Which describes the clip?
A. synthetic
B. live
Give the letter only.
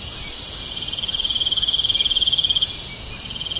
B